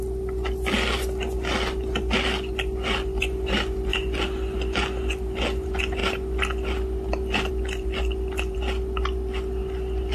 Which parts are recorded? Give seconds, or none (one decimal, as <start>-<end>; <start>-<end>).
0.0-10.1